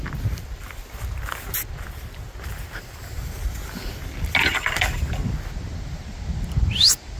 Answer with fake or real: real